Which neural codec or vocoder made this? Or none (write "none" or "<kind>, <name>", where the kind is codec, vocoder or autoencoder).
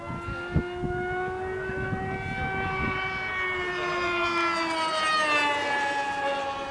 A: none